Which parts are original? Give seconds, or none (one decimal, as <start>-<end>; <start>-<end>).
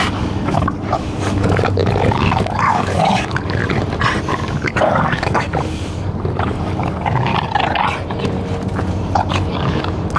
3.6-4.3; 7.3-9.3